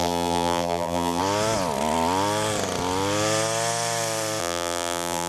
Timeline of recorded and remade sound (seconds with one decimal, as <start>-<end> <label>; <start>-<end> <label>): 0.0-1.2 remade; 1.2-4.4 recorded; 4.4-5.3 remade